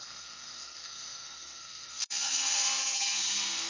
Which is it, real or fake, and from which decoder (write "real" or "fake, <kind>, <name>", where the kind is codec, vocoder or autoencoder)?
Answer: fake, codec, SNAC